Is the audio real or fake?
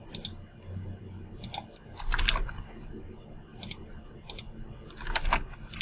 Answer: real